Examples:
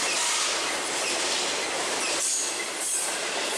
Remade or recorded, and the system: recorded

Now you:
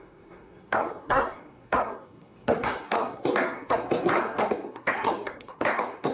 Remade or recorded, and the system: remade, codec, SNAC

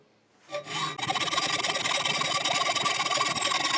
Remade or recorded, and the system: recorded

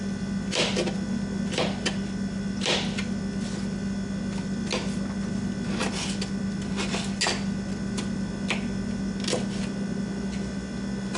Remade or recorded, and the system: recorded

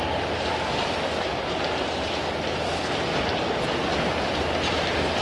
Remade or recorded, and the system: recorded